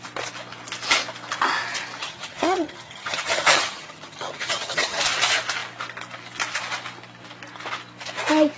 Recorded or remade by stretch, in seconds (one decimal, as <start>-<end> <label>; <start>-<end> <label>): 0.0-2.0 recorded; 2.0-5.0 remade; 5.0-8.6 recorded

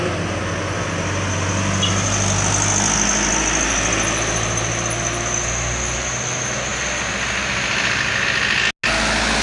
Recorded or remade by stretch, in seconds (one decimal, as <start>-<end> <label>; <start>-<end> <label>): 0.0-9.4 recorded

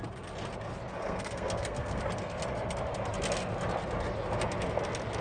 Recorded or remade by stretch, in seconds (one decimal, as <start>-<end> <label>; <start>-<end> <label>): 0.0-1.0 recorded; 1.0-2.0 remade; 2.0-5.2 recorded

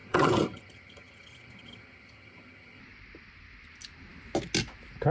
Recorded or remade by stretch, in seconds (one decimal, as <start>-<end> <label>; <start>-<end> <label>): 0.0-2.8 remade; 2.8-5.1 recorded

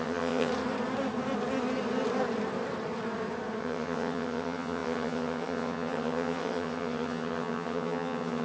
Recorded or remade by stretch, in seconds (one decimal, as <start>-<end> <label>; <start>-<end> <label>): 0.0-0.5 remade; 0.5-3.6 recorded; 3.6-8.4 remade

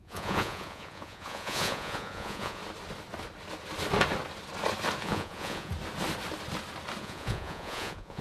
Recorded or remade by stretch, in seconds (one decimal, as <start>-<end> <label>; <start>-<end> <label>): 0.0-2.6 remade; 2.6-5.0 recorded; 5.0-5.7 remade; 5.7-7.0 recorded; 7.0-8.2 remade